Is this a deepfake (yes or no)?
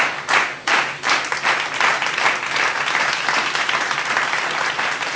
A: no